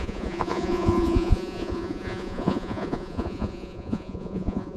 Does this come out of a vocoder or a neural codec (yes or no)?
yes